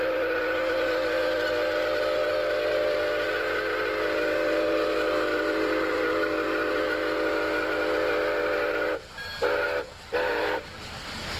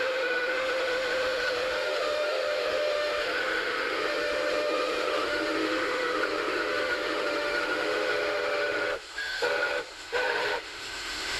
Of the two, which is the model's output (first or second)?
second